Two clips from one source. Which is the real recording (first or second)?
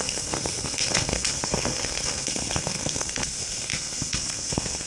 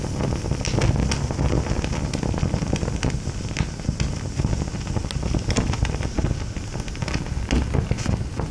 second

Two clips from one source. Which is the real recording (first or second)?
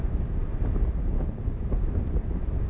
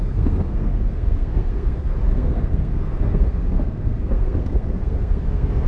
first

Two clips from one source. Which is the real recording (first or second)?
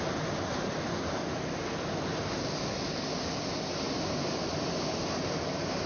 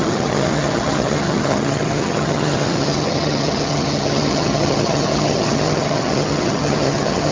first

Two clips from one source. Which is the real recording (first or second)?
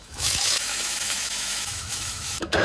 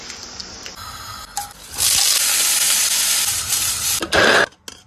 second